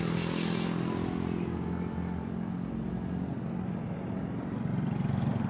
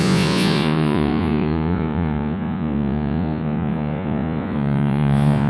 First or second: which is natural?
first